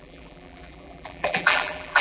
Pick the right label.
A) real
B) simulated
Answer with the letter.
B